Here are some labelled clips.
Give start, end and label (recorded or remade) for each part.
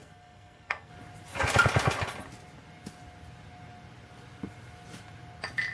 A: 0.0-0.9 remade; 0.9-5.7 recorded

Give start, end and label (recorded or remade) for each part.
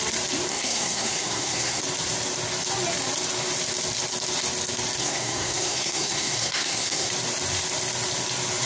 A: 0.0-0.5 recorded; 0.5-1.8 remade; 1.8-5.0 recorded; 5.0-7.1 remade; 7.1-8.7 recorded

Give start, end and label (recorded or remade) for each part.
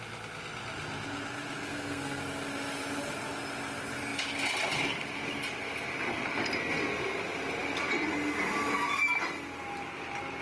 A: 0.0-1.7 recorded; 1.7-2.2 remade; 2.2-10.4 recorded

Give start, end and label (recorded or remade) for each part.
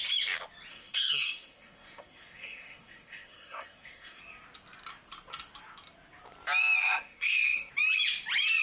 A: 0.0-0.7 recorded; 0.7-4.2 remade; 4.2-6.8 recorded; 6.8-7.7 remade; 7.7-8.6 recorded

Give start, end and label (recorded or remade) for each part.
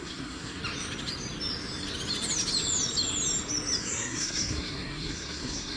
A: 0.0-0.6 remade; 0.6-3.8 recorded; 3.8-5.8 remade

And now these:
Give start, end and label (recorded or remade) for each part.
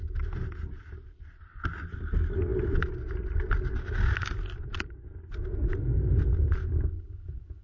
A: 0.0-7.6 recorded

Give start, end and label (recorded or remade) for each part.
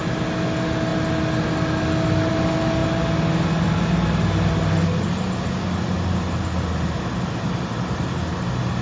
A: 0.0-8.8 recorded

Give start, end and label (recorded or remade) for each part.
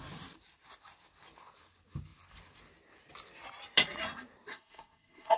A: 0.0-4.5 recorded; 4.5-5.4 remade